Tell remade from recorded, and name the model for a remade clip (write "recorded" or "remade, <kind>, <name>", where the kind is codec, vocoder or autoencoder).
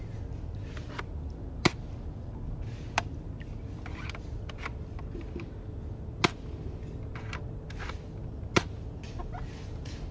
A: recorded